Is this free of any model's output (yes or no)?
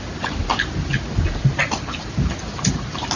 yes